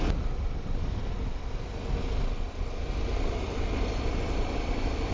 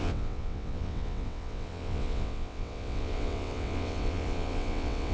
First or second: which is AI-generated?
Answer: second